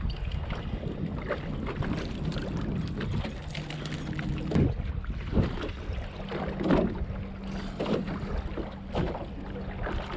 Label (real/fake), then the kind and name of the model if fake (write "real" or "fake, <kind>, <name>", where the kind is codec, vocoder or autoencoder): real